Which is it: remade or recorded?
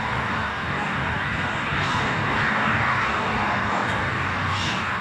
remade